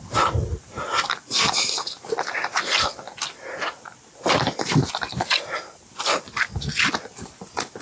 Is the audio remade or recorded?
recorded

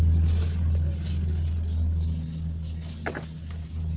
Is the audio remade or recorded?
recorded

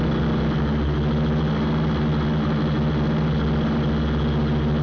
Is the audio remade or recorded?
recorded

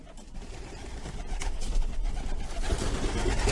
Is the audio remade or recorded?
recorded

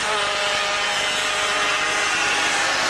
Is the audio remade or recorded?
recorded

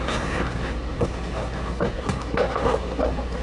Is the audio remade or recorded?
remade